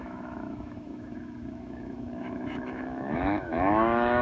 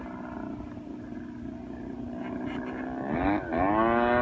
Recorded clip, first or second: second